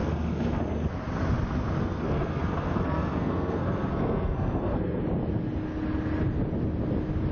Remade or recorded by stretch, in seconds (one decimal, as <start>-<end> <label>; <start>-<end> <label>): 0.0-0.6 remade; 0.6-1.8 recorded; 1.8-5.0 remade; 5.0-7.3 recorded